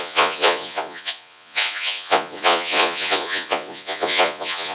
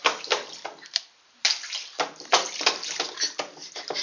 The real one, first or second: second